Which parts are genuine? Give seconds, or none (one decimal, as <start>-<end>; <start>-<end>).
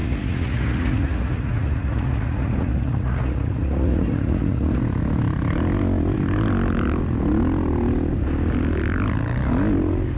4.8-10.2